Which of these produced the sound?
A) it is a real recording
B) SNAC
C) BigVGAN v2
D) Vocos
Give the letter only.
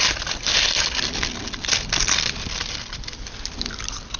A